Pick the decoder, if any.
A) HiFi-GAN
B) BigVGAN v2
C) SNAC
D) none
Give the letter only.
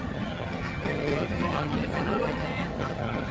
A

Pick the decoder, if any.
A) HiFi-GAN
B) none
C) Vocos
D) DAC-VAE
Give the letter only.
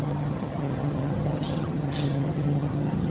A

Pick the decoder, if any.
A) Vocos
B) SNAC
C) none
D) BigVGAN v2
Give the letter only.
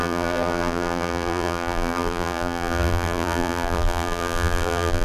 D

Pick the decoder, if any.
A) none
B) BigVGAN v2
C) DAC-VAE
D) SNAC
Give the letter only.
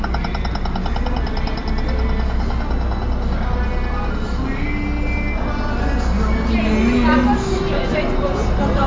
A